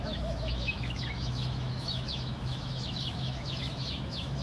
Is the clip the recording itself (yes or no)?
no